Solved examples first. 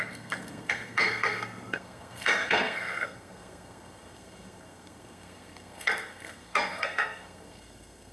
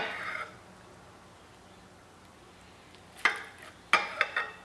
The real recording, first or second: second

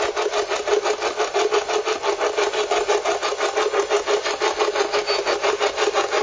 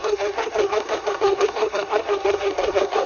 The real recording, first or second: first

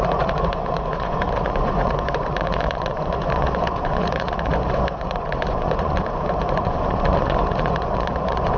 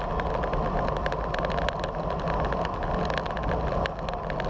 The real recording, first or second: second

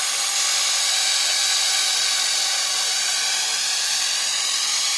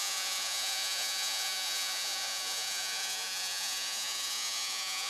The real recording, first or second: first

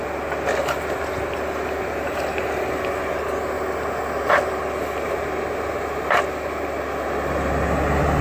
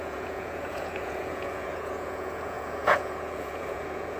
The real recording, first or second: first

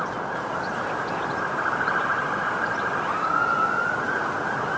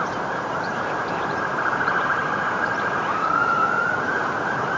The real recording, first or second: first